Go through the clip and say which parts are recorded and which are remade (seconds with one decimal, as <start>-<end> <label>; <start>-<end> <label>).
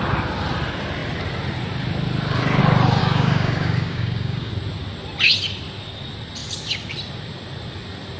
0.0-3.0 recorded; 3.0-4.5 remade; 4.5-8.2 recorded